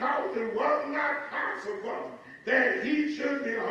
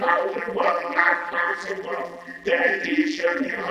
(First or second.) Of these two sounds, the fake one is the second